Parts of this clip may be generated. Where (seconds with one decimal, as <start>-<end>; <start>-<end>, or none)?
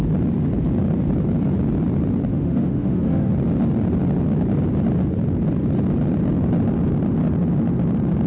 2.3-3.3